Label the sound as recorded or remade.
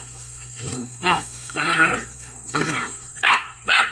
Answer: remade